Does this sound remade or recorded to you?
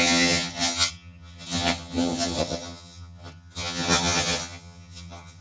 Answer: remade